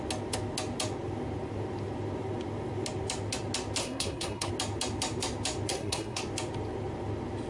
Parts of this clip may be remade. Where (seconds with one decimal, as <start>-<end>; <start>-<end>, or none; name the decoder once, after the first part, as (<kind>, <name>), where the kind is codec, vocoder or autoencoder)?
3.8-4.5 (codec, SNAC); 5.7-6.2